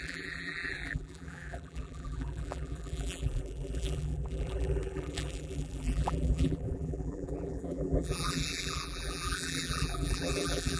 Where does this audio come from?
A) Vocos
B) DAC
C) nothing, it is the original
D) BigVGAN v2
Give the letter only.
D